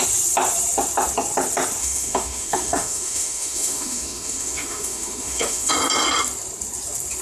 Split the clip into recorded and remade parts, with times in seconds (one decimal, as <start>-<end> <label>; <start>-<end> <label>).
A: 0.0-1.8 recorded; 1.8-5.7 remade; 5.7-7.2 recorded